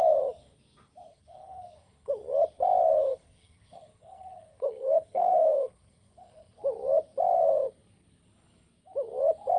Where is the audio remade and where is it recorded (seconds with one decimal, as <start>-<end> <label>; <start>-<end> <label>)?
0.0-1.1 recorded; 1.1-2.1 remade; 2.1-3.1 recorded; 3.1-6.6 remade; 6.6-9.6 recorded